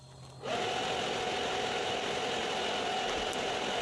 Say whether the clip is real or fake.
real